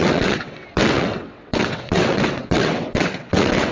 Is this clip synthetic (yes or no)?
yes